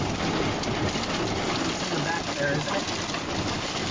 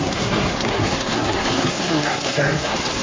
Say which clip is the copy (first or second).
second